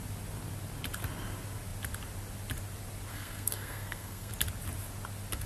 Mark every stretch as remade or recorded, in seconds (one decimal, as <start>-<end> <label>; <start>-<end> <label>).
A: 0.0-3.1 recorded; 3.1-4.3 remade; 4.3-5.5 recorded